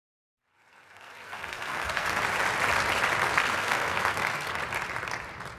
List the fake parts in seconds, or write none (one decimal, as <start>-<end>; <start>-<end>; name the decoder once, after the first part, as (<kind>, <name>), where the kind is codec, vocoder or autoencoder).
0.5-2.2 (codec, SNAC); 3.2-4.6